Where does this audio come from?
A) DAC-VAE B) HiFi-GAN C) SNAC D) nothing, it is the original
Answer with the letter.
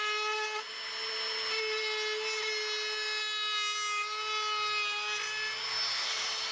D